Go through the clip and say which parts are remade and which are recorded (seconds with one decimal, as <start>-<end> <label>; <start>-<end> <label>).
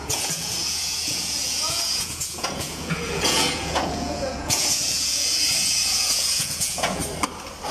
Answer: 0.0-7.0 remade; 7.0-7.7 recorded